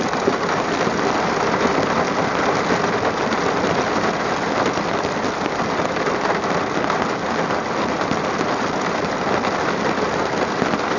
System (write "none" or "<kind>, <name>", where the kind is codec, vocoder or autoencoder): none